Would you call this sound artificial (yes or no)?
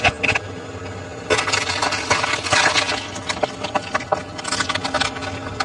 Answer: no